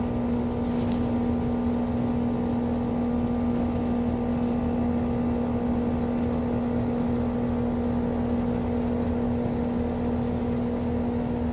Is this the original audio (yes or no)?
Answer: yes